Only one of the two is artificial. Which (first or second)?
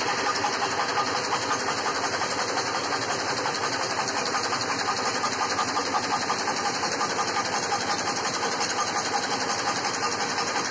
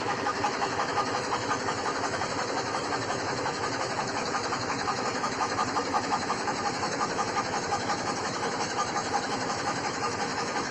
second